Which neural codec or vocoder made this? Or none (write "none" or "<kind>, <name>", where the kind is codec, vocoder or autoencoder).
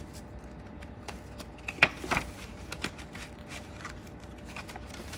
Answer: vocoder, BigVGAN v2